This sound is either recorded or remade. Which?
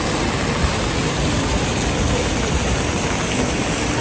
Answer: recorded